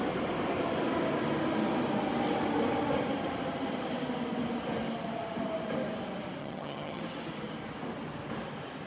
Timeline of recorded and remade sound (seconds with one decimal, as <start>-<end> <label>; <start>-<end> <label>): 0.0-6.4 recorded; 6.4-7.0 remade; 7.0-8.9 recorded

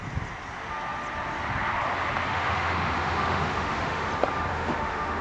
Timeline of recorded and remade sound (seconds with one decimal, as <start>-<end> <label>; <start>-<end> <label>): 0.0-2.3 recorded; 2.3-4.1 remade; 4.1-4.5 recorded; 4.5-5.2 remade

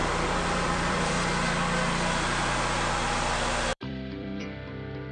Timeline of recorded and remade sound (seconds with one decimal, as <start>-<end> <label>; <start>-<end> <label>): 0.0-1.1 remade; 1.1-3.7 recorded; 3.7-5.1 remade

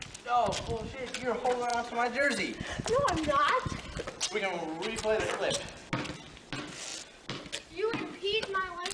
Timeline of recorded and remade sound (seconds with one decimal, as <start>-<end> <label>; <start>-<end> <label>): 0.0-1.7 recorded; 1.7-4.4 remade; 4.4-8.9 recorded

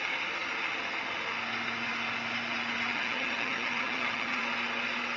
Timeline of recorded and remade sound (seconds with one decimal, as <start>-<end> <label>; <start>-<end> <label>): 0.0-2.9 recorded; 2.9-4.4 remade; 4.4-5.2 recorded

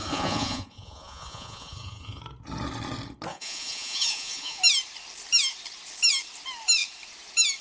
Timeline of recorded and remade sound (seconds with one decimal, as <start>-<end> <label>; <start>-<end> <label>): 0.0-2.2 remade; 2.2-3.3 recorded; 3.3-4.6 remade; 4.6-7.6 recorded

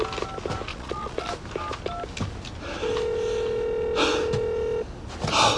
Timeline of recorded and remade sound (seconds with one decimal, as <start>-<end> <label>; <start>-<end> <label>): 0.0-0.7 recorded; 0.7-1.3 remade; 1.3-5.6 recorded

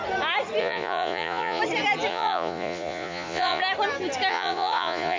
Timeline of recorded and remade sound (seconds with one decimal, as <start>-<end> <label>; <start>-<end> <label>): 0.0-0.6 recorded; 0.6-1.6 remade; 1.6-2.1 recorded; 2.1-3.6 remade; 3.6-4.3 recorded; 4.3-5.2 remade